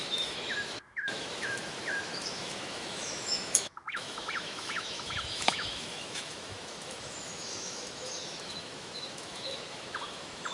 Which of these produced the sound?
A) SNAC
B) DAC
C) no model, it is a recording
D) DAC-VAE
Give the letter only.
D